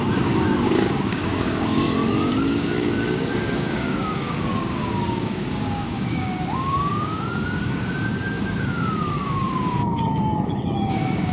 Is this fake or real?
fake